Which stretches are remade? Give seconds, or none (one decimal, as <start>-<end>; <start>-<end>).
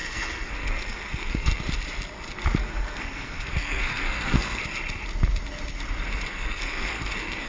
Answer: 0.0-1.6; 2.6-4.6; 6.3-7.5